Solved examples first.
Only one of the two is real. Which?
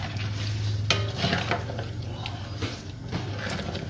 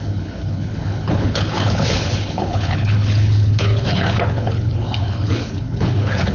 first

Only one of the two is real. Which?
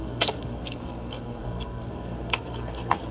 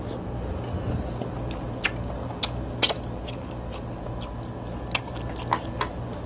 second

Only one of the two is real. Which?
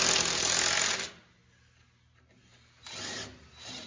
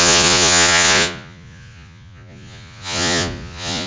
first